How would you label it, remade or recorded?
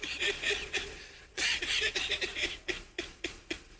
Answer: remade